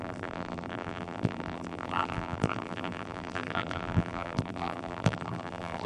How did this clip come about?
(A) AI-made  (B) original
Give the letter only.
A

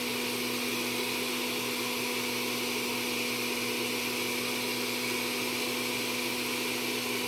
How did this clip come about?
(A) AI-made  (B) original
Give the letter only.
B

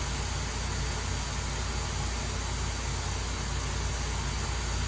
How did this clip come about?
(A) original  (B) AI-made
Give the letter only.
A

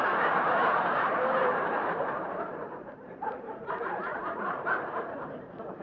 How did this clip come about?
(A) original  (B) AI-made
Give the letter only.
B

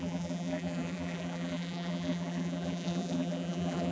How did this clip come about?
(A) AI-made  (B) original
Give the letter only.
A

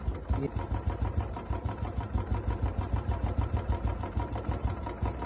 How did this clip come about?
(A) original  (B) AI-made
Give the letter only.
B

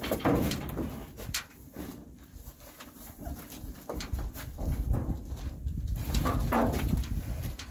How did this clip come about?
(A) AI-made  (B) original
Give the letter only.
A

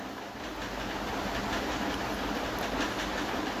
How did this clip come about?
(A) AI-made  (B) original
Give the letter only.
B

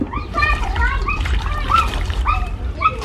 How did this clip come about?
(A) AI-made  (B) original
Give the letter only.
A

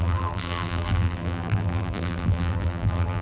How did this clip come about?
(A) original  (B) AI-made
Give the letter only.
B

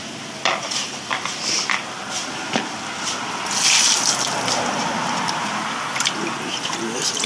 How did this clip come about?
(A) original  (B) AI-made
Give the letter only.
A